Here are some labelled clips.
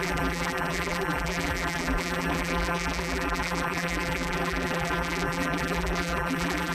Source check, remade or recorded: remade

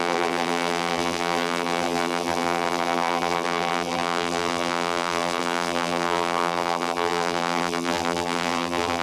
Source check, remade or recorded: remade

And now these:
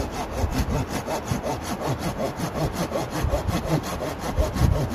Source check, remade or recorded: recorded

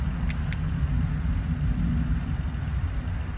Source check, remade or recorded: recorded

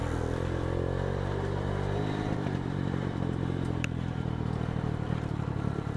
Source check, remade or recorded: remade